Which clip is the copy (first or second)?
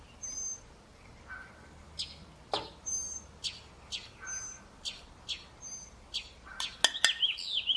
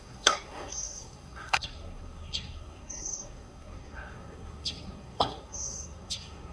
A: second